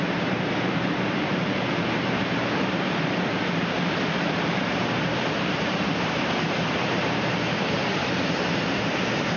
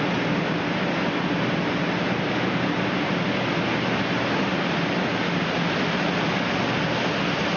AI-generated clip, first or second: first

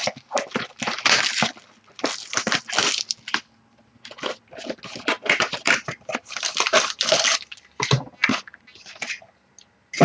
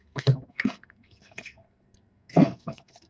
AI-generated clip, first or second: second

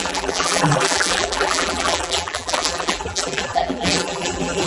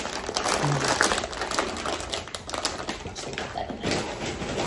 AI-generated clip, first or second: first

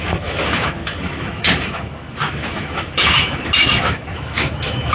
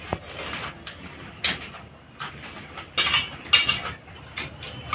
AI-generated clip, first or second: first